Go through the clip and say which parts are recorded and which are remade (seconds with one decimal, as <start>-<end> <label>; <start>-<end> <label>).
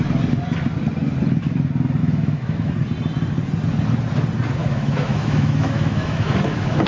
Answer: 0.0-2.0 recorded; 2.0-2.7 remade; 2.7-4.6 recorded; 4.6-6.9 remade